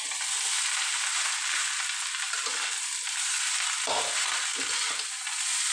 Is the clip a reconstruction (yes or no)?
no